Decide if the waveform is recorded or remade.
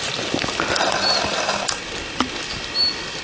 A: recorded